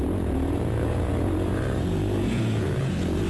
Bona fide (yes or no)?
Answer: no